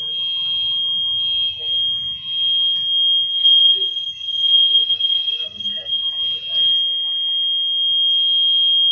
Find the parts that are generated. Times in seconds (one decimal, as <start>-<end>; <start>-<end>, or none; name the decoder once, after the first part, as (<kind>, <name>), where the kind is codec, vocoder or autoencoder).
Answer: 3.3-6.1 (codec, SNAC)